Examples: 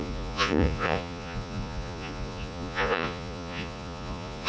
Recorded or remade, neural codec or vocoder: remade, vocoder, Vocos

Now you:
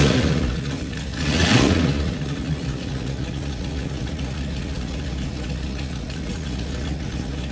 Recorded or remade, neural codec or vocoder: remade, vocoder, Vocos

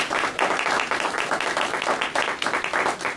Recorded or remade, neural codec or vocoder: recorded